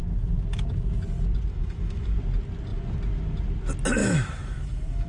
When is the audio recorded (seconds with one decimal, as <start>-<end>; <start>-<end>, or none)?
0.0-1.5; 2.1-4.0